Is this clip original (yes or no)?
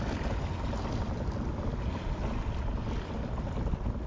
yes